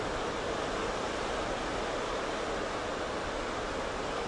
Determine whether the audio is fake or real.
real